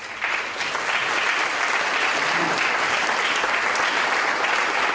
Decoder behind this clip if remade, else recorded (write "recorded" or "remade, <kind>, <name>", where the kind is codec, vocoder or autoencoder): recorded